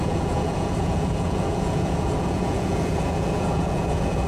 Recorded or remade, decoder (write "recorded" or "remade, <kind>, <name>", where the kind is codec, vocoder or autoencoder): remade, vocoder, Vocos